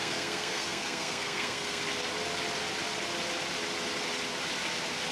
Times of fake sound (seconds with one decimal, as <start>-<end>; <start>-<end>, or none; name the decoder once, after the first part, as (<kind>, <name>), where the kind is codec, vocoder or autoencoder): 0.0-1.8 (codec, SNAC)

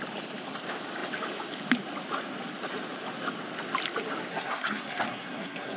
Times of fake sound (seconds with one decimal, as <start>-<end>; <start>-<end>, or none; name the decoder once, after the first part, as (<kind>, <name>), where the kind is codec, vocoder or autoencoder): 4.3-5.8 (codec, SNAC)

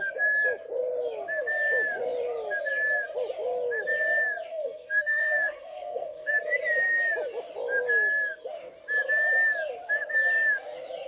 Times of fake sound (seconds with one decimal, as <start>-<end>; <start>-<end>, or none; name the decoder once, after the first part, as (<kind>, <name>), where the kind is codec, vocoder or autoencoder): 4.5-6.3 (codec, SNAC)

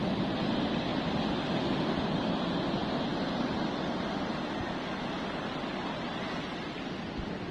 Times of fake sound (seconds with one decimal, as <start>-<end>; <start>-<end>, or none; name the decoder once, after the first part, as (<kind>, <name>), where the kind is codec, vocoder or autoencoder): none